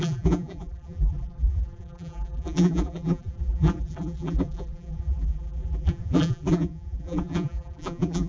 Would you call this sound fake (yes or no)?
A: yes